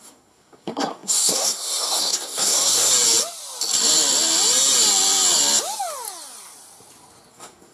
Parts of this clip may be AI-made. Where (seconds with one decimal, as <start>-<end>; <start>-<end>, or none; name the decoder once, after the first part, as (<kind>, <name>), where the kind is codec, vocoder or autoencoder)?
0.0-2.9 (codec, SNAC); 7.3-7.7